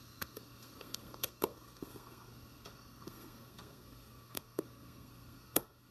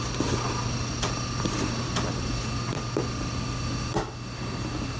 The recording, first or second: second